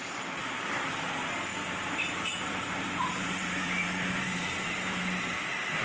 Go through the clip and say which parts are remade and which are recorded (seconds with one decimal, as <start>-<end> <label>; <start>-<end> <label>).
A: 0.0-1.5 recorded; 1.5-5.0 remade; 5.0-5.8 recorded